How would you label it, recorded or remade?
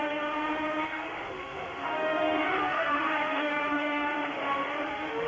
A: remade